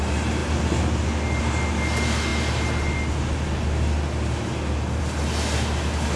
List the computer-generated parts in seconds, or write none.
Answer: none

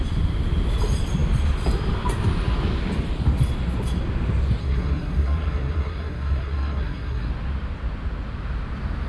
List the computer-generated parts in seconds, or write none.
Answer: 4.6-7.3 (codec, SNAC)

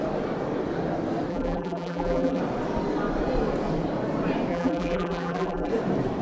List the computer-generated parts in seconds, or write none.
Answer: 1.3-2.4 (vocoder, BigVGAN v2); 4.5-5.7

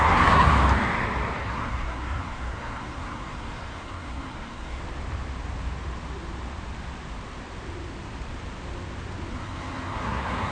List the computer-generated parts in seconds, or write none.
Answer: 0.0-0.5 (codec, SNAC); 1.4-4.8; 9.3-10.5